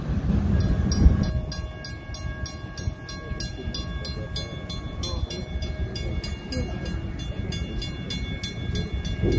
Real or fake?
real